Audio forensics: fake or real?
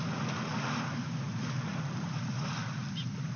real